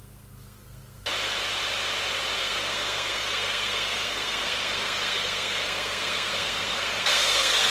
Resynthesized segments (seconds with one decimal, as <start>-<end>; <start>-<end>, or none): 0.0-1.1; 2.4-7.7